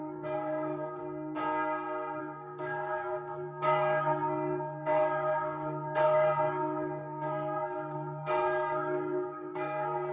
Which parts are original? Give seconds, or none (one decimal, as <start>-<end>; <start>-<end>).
1.0-2.2